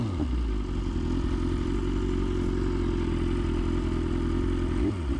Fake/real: real